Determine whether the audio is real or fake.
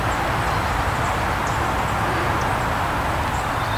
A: real